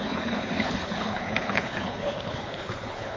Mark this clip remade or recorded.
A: remade